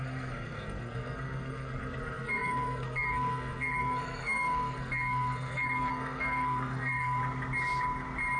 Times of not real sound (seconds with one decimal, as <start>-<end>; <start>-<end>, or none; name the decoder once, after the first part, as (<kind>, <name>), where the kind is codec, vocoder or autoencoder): 0.0-7.2 (codec, SNAC)